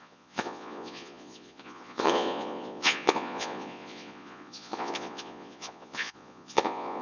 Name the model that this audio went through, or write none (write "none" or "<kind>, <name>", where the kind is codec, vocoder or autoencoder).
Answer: vocoder, Vocos